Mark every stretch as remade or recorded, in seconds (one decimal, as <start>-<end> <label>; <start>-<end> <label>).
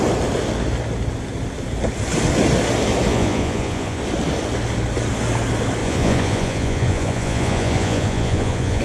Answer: 0.0-3.1 recorded; 3.1-4.0 remade; 4.0-5.8 recorded; 5.8-8.8 remade